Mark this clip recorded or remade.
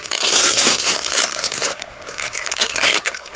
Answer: remade